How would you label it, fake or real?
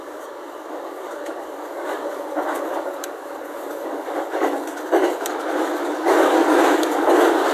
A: fake